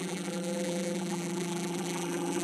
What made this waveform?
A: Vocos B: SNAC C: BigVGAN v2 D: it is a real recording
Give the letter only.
C